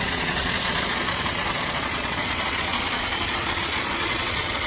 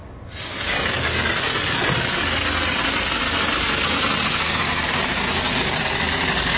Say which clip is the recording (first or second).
second